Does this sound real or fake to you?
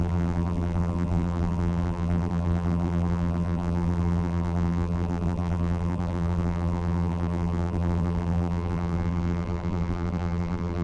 fake